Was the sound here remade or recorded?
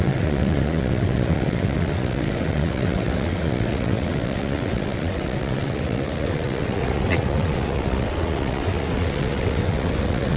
remade